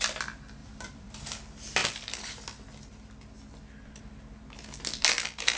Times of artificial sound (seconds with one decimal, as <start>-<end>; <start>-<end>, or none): 0.6-1.2